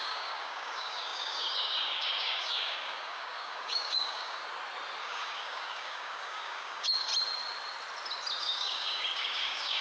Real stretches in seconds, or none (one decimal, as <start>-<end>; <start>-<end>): 4.4-5.0; 7.1-8.4